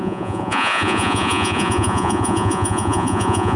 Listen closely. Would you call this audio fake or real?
fake